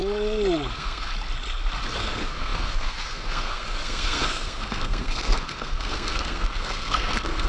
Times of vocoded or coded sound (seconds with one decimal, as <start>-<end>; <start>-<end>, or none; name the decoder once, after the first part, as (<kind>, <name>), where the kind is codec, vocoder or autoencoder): 0.7-1.1 (codec, SNAC); 2.0-7.5